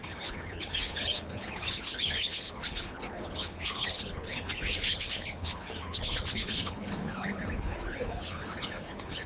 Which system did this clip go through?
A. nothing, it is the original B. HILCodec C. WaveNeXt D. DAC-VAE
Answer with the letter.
B